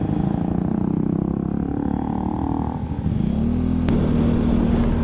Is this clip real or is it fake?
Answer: real